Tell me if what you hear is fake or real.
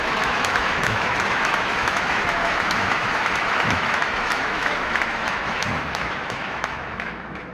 fake